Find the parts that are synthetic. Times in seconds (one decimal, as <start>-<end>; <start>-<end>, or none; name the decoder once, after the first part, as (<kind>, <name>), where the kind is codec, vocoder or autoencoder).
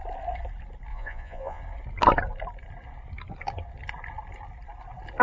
0.9-1.6 (vocoder, Vocos)